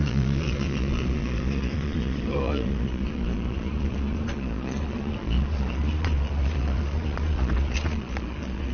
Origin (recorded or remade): remade